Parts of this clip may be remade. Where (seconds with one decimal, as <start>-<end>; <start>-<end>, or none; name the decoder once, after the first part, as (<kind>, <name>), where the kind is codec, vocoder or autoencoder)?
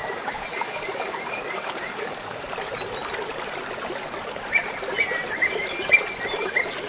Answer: 0.0-2.4 (codec, DAC)